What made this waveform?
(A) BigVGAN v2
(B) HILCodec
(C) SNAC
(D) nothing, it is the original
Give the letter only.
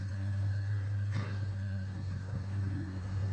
C